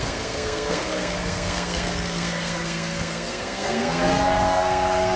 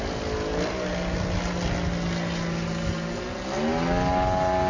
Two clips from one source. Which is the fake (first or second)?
first